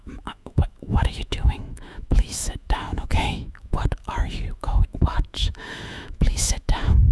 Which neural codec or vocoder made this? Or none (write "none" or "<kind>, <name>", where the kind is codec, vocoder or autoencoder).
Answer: autoencoder, DAC-VAE